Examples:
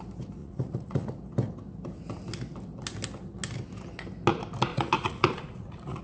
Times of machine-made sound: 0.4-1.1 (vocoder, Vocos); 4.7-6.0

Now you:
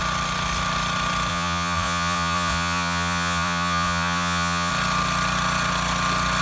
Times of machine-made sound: 1.3-4.7 (vocoder, Vocos)

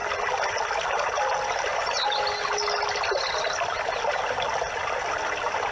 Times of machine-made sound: none